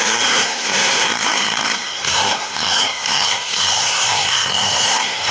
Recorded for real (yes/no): no